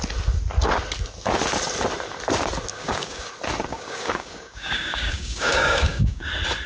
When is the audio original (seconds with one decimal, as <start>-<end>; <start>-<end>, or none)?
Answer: 0.0-2.7; 3.3-3.7; 6.3-6.7